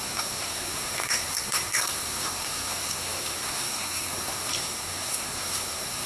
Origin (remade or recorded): remade